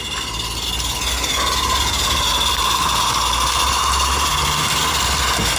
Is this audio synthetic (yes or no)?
no